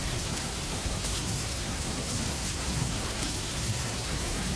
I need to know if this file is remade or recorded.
remade